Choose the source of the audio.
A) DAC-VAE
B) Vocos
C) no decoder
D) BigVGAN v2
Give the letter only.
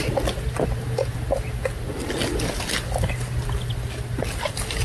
C